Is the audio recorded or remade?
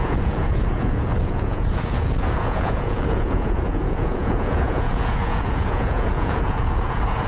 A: remade